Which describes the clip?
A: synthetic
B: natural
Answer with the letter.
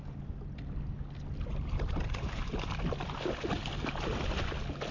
B